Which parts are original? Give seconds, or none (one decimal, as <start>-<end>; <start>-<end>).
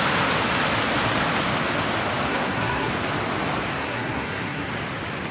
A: 0.0-2.3; 2.9-3.8; 4.7-5.3